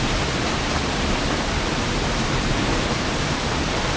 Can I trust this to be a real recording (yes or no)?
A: no